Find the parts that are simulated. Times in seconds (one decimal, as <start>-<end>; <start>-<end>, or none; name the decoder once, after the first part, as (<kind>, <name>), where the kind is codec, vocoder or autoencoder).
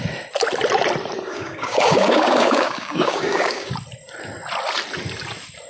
1.3-3.7 (codec, DAC)